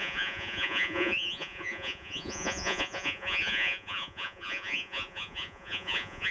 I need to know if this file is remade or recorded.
remade